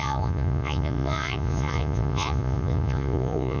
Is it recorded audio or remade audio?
remade